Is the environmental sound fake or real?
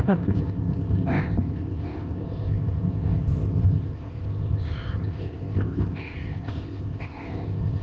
fake